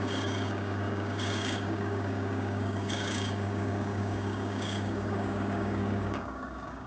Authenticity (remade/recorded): remade